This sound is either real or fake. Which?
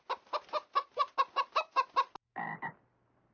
real